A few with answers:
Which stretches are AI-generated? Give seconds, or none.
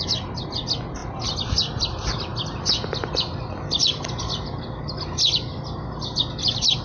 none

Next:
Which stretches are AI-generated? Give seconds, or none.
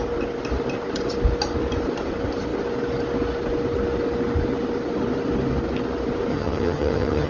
6.3-7.3 (vocoder, HiFi-GAN)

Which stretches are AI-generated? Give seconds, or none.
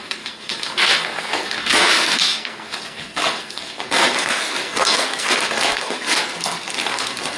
0.0-7.4 (codec, SNAC)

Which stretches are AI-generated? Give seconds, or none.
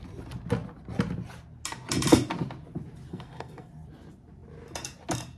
3.1-3.7 (codec, SNAC)